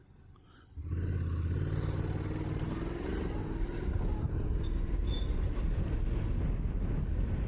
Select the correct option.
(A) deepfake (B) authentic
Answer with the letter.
B